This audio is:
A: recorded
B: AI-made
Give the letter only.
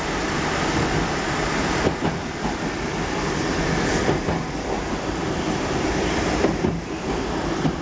A